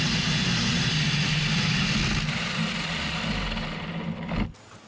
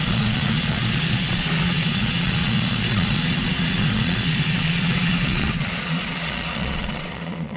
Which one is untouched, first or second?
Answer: first